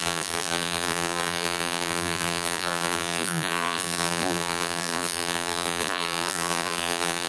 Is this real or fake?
fake